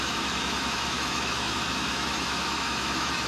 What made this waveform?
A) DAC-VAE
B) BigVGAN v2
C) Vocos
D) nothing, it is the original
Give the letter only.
A